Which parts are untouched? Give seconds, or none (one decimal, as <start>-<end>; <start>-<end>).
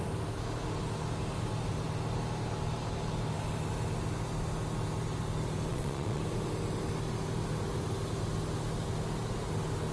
0.0-5.7; 6.2-9.9